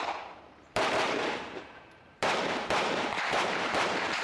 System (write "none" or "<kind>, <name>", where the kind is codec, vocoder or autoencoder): vocoder, BigVGAN v2